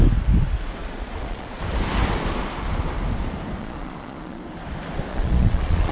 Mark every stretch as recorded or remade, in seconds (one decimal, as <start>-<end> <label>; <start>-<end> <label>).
0.0-0.8 recorded; 0.8-1.6 remade; 1.6-3.6 recorded; 3.6-4.4 remade; 4.4-5.1 recorded; 5.1-5.9 remade